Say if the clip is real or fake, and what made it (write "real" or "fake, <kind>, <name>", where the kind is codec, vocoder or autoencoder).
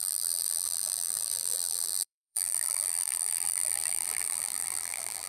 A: fake, vocoder, BigVGAN v2